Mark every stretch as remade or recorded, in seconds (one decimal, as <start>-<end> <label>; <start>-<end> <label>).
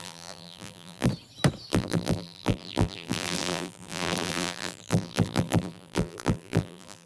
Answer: 0.0-1.1 remade; 1.1-1.7 recorded; 1.7-7.1 remade